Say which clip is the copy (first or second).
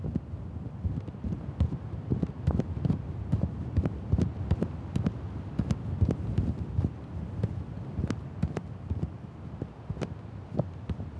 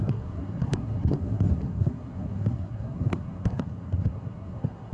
second